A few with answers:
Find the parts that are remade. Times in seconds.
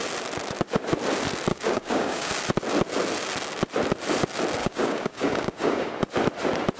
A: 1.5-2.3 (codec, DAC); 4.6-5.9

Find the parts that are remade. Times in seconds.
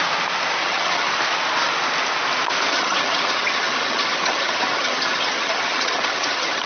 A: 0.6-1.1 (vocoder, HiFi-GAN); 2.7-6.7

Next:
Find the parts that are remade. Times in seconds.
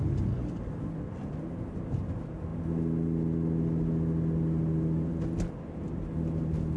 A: none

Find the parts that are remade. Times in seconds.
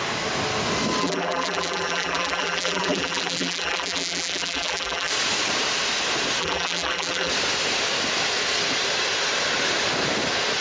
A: 1.0-5.1 (vocoder, BigVGAN v2); 6.4-7.3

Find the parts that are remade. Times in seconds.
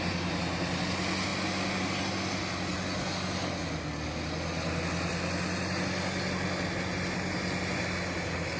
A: none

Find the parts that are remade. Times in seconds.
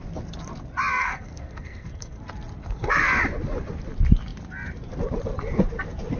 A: 0.9-2.2 (codec, SNAC); 2.6-3.2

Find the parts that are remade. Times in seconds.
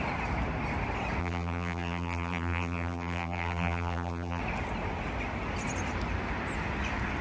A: 1.2-4.4 (vocoder, BigVGAN v2)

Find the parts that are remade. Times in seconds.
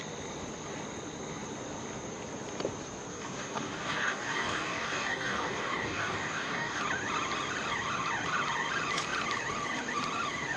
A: 3.1-6.8 (codec, DAC)